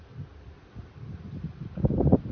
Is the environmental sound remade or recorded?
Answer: recorded